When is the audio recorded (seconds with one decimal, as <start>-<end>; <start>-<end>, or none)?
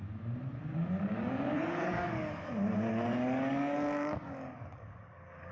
0.0-0.8; 2.5-2.9